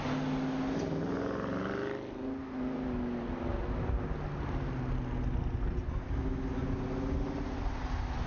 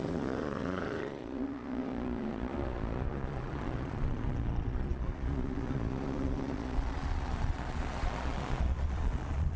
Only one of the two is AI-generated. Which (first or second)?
second